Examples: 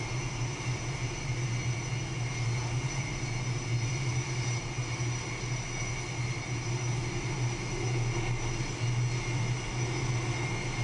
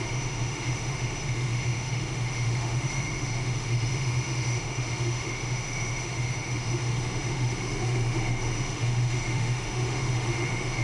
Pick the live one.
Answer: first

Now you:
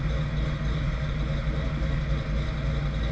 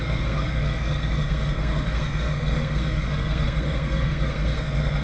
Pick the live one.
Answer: first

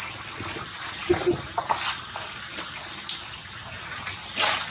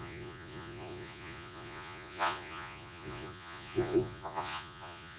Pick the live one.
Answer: first